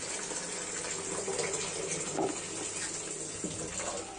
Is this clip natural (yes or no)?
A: yes